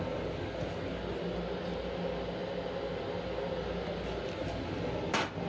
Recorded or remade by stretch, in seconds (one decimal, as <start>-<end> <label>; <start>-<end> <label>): 0.0-5.5 recorded